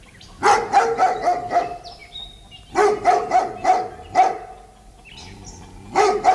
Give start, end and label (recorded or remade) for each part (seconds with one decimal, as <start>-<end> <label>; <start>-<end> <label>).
0.0-6.3 recorded

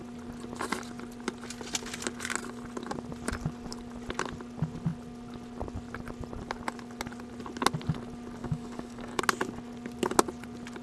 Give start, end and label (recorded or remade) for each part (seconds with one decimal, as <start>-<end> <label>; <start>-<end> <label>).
0.0-8.4 recorded; 8.4-9.2 remade; 9.2-10.8 recorded

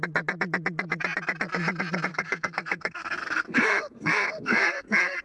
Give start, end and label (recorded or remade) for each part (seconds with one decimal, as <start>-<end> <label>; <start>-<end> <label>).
0.0-2.1 recorded; 2.1-5.2 remade

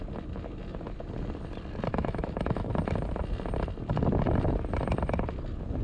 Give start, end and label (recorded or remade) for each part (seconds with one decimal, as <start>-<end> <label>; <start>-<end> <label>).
0.0-1.9 recorded; 1.9-2.7 remade; 2.7-5.8 recorded

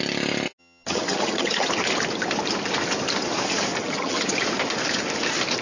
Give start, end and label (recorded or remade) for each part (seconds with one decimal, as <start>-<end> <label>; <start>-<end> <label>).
0.0-0.6 recorded; 0.6-1.7 remade; 1.7-3.8 recorded; 3.8-4.3 remade; 4.3-5.6 recorded

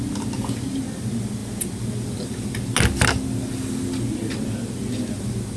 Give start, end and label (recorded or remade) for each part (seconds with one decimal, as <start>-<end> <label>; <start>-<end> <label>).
0.0-5.6 recorded